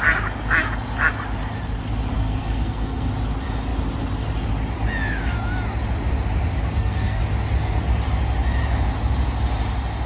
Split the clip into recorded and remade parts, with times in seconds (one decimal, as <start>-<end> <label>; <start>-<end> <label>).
0.0-2.2 recorded; 2.2-3.1 remade; 3.1-6.7 recorded; 6.7-7.2 remade; 7.2-10.1 recorded